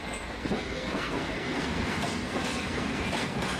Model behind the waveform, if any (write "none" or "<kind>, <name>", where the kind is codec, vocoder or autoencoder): codec, SNAC